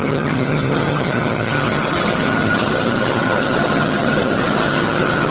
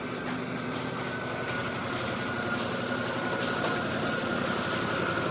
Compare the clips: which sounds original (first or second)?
second